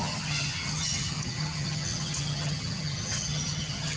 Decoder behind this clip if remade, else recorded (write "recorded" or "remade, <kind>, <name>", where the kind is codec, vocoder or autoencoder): remade, vocoder, HiFi-GAN